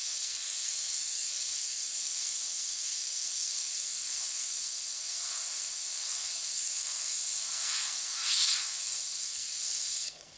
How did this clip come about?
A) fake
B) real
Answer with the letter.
A